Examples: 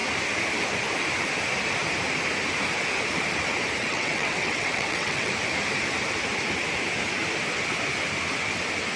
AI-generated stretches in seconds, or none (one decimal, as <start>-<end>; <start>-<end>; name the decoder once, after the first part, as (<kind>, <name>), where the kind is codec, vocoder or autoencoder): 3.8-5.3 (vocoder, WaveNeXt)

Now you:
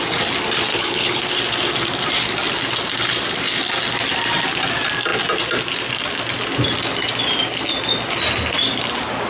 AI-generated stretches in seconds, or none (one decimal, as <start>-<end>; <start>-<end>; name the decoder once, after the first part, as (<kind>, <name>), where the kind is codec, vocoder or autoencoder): 0.7-1.2 (codec, HILCodec)

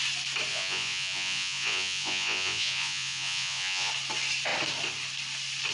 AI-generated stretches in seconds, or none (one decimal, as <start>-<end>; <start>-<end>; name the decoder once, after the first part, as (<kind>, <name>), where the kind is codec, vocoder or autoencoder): 0.5-3.9 (vocoder, Vocos)